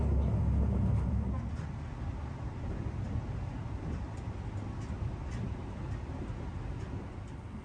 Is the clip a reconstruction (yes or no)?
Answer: no